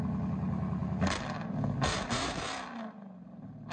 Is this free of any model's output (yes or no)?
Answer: yes